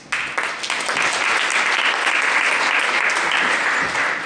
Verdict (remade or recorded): recorded